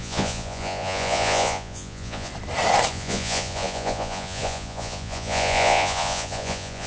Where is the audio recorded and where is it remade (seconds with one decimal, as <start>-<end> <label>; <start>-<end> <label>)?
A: 0.0-2.3 remade; 2.3-2.9 recorded; 2.9-6.9 remade